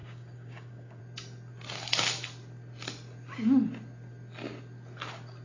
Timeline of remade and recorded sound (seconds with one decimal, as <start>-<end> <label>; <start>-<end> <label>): 0.0-1.0 remade; 1.0-5.4 recorded